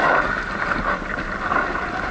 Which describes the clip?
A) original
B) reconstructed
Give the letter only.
A